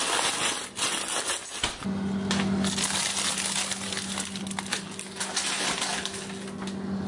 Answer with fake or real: real